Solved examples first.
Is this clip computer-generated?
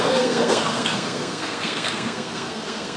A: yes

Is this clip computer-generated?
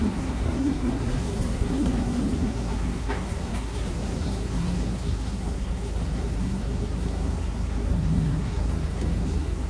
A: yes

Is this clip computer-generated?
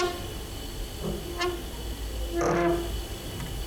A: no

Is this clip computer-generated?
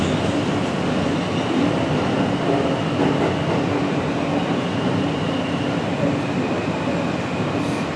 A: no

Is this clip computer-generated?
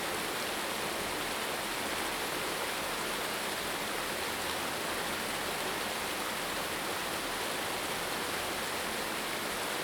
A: no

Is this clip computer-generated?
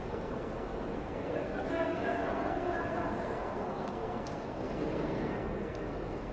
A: yes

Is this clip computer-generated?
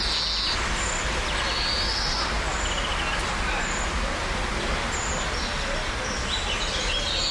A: no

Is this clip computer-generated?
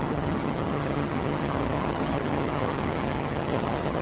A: yes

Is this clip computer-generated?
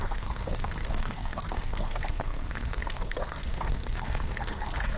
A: yes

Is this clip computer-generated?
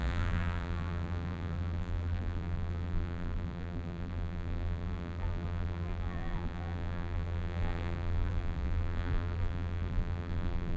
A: yes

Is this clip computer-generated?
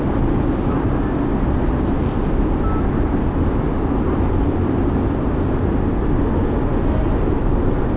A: no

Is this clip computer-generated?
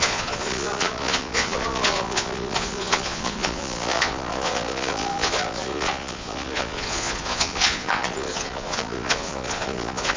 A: yes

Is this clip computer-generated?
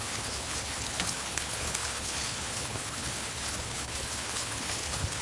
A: yes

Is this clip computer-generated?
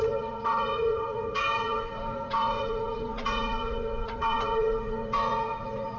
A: yes